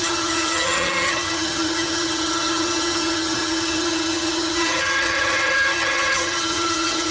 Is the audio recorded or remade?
remade